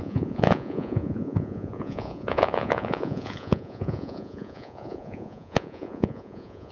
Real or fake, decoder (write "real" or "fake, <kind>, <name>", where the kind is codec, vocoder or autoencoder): fake, vocoder, Vocos